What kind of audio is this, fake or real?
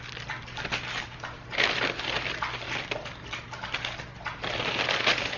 real